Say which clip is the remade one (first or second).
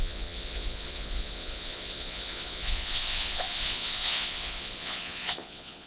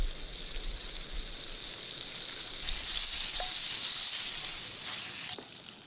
first